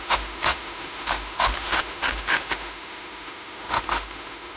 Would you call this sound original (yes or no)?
no